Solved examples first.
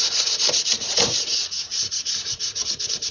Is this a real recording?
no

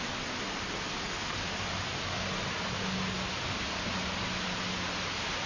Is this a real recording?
yes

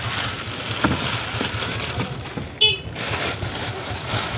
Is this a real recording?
yes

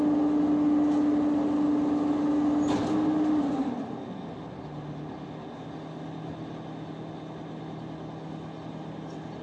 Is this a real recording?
yes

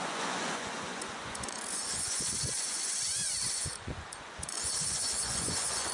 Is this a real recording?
no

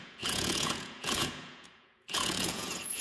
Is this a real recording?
no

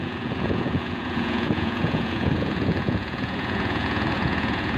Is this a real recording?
no